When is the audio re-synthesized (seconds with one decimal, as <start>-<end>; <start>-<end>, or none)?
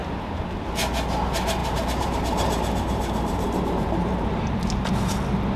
1.6-4.4